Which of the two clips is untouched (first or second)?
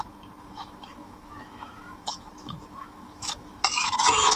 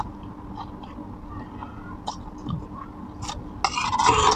second